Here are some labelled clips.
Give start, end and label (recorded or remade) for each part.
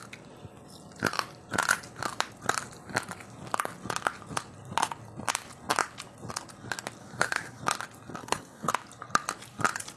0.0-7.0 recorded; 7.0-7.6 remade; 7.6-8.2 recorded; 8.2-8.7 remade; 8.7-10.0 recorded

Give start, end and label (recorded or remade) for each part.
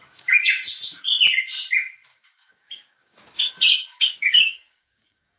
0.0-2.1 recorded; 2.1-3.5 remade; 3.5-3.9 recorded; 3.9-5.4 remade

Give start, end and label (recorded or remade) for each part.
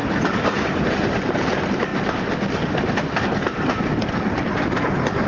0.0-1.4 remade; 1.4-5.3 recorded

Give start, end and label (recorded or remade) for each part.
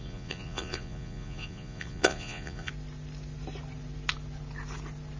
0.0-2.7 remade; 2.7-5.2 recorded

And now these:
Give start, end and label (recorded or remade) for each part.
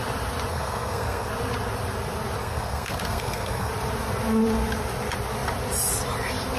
0.0-0.5 recorded; 0.5-1.3 remade; 1.3-2.4 recorded; 2.4-3.7 remade; 3.7-6.6 recorded